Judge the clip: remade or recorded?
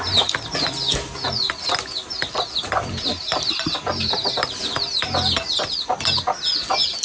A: recorded